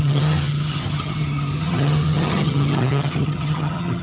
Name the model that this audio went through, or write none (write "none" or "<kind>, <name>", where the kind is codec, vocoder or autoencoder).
vocoder, HiFi-GAN